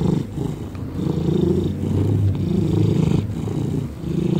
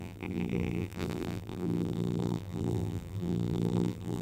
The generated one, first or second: second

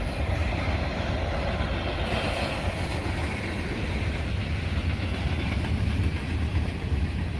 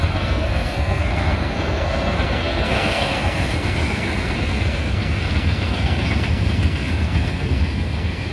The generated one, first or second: second